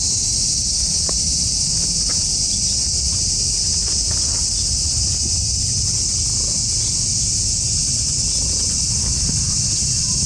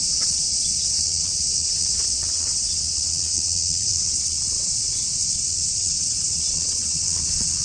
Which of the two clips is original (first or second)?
first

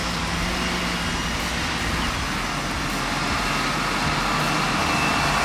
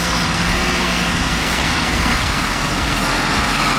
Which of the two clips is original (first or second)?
first